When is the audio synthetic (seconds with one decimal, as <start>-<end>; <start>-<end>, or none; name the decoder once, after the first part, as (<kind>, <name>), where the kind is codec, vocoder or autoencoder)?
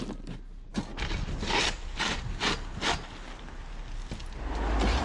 none